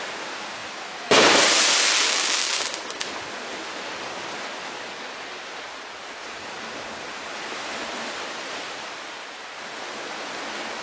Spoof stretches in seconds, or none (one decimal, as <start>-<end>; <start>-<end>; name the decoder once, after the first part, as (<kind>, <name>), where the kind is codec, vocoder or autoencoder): none